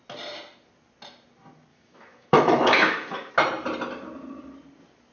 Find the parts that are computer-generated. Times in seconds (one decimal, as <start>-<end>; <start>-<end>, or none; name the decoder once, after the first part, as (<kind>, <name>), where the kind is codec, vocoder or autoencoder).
1.7-3.3 (autoencoder, DAC-VAE)